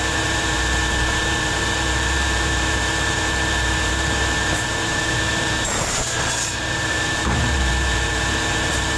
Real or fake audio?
fake